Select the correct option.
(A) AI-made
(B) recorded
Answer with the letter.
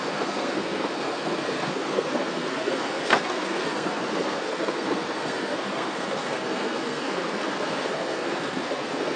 A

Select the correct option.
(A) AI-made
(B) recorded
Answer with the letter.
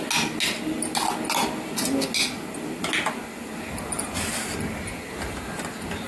B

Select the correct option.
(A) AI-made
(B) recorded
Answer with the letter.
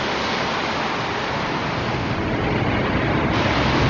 B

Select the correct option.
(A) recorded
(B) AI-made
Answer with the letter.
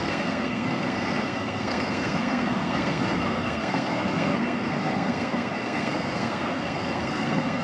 B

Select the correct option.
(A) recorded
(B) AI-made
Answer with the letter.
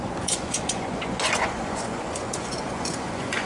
B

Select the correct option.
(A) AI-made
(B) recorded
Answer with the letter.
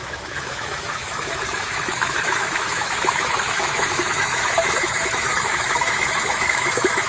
A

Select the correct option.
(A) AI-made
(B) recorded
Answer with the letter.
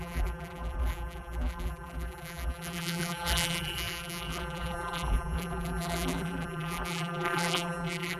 A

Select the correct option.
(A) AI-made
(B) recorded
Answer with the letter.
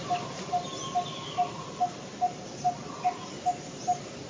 B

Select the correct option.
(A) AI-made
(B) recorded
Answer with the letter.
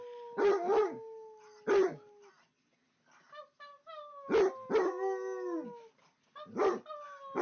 B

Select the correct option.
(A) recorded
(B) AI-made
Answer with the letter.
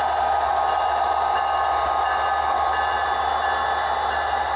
A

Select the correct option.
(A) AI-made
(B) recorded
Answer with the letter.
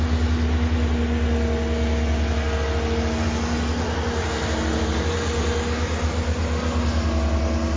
B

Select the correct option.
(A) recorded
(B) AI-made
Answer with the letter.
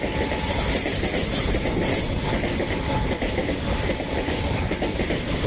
A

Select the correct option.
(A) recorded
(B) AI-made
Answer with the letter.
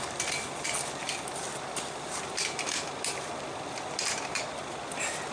A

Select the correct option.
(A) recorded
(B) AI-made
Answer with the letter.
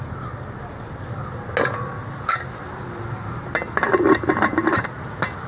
A